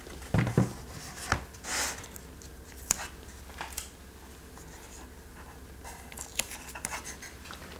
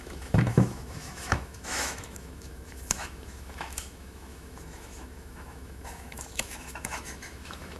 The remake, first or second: second